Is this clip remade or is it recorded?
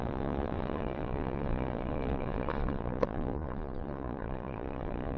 remade